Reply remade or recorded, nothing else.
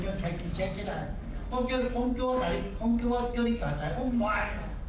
remade